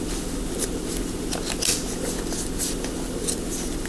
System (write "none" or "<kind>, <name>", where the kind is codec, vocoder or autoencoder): none